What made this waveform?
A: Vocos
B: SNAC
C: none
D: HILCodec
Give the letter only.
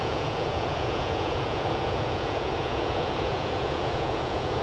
A